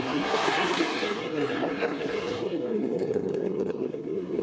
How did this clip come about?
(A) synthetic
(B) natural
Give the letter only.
A